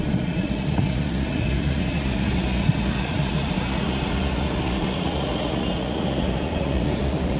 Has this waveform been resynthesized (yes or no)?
yes